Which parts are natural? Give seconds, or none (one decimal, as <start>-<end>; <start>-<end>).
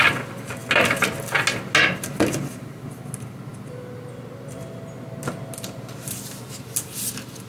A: 0.0-7.5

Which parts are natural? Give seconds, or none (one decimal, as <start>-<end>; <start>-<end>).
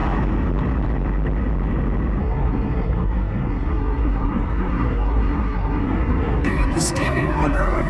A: 0.0-2.2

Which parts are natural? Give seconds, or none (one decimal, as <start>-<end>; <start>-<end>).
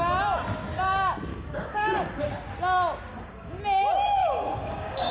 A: 0.0-1.3; 2.2-3.1; 3.6-4.2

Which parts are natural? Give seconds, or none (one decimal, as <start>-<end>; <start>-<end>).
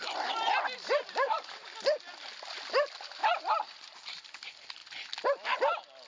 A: 0.0-6.1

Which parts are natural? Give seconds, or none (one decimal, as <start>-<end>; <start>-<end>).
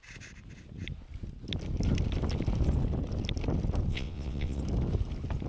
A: 0.0-3.9; 4.6-5.5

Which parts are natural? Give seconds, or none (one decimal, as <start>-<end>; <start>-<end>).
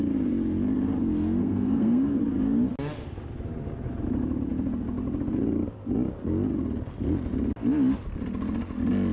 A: 0.0-1.4; 2.2-9.1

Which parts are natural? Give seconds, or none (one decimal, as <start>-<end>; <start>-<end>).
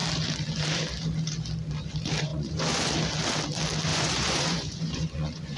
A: 0.0-2.3; 2.9-3.9